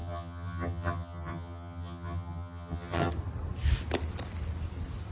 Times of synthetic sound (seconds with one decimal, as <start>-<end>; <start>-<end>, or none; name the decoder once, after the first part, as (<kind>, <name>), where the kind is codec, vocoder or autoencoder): 0.0-3.1 (vocoder, HiFi-GAN)